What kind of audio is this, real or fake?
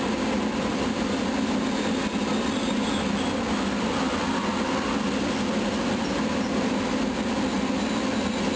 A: real